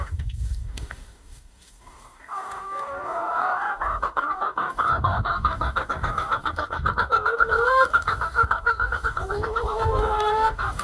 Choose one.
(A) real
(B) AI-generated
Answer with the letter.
B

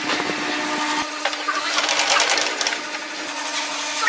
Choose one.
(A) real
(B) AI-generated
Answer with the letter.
A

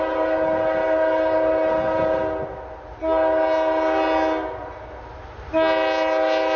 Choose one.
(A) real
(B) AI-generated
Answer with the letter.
A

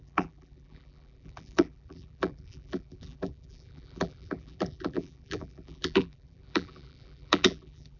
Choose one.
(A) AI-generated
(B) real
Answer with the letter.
A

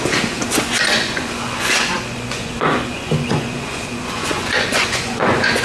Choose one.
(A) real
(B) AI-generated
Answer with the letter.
B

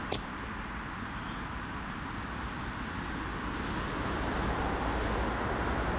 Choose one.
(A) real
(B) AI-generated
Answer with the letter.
A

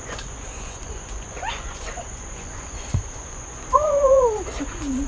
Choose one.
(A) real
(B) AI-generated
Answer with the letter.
B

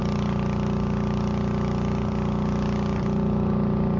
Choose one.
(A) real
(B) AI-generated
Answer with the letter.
A